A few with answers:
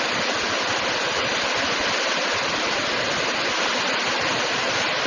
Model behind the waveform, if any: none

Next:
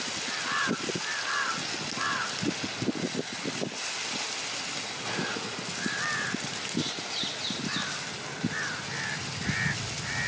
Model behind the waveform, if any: none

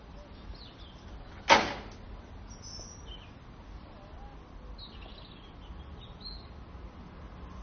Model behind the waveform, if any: none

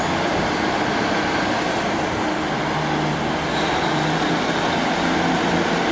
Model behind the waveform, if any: none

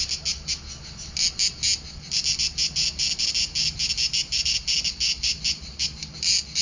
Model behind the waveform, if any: none